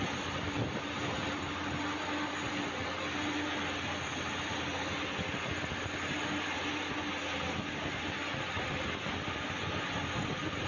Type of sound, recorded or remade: recorded